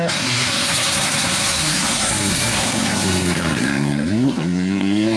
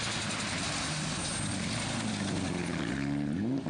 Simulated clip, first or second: first